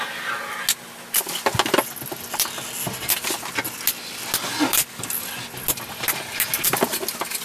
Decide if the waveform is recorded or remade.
recorded